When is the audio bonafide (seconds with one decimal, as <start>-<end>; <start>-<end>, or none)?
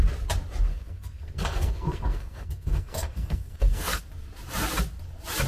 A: 0.0-0.7; 4.0-5.5